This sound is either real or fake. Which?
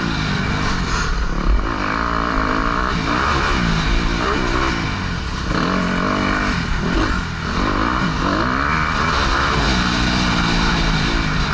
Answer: real